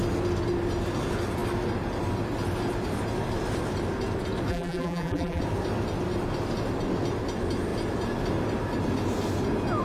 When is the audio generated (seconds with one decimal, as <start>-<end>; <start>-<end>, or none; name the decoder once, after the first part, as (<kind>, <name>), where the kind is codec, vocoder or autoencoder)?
4.5-5.4 (vocoder, BigVGAN v2)

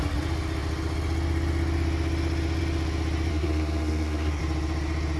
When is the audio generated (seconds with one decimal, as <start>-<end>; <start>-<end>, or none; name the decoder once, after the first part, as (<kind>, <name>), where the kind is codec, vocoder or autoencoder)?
3.3-4.4 (codec, SNAC)

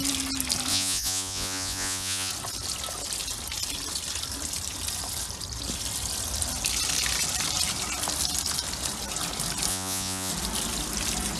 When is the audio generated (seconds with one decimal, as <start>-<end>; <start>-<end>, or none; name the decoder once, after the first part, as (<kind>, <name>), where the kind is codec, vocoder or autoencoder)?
0.7-2.3 (vocoder, Vocos); 9.7-10.3